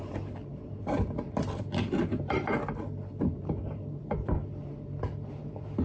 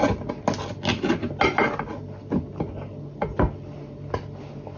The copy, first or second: first